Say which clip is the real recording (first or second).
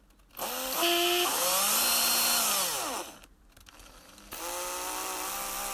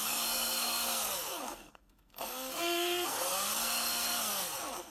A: first